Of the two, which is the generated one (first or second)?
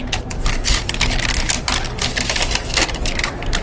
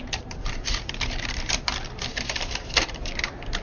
second